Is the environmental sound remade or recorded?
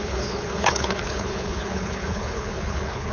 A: remade